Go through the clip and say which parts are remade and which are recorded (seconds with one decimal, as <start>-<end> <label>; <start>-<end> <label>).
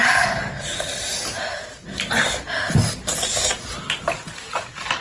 0.0-5.0 recorded